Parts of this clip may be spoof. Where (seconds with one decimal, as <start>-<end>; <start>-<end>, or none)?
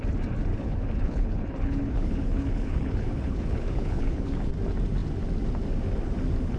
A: 0.5-4.5